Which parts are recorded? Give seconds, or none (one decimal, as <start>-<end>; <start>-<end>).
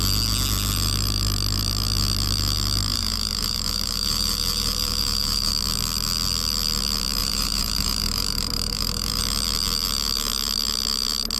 0.0-2.9; 5.5-7.2; 9.2-11.4